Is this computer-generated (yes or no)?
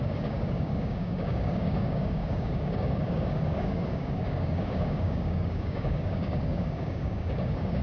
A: yes